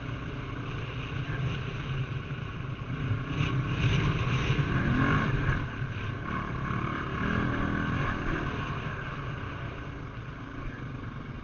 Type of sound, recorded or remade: recorded